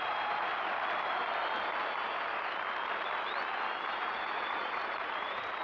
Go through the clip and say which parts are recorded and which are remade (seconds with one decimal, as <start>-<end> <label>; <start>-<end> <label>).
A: 0.0-0.5 remade; 0.5-3.9 recorded; 3.9-5.6 remade